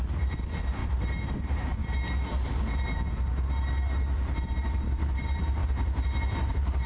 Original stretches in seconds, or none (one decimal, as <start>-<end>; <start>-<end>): 1.8-4.9; 5.6-6.5